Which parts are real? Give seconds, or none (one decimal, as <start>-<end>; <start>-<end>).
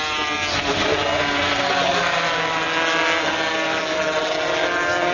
0.0-5.1